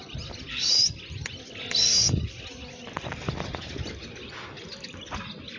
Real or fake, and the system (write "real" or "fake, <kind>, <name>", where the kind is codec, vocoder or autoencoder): real